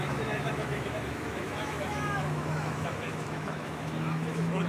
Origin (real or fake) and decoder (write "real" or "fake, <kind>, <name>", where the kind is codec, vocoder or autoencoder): fake, autoencoder, DAC-VAE